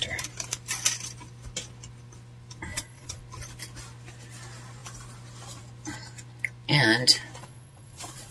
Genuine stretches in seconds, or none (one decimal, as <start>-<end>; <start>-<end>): 0.0-2.7; 3.2-7.4